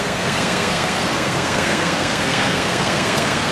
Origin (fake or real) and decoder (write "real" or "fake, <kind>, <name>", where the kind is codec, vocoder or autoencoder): fake, codec, SNAC